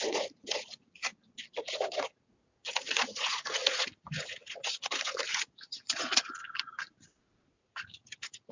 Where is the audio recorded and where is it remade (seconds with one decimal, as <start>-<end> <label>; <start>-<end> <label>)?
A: 0.0-1.1 remade; 1.1-1.6 recorded; 1.6-6.4 remade; 6.4-7.5 recorded; 7.5-8.5 remade